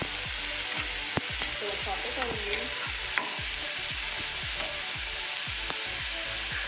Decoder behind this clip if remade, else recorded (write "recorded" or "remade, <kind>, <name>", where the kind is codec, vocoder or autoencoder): recorded